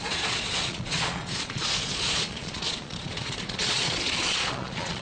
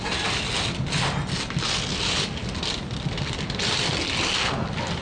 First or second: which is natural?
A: second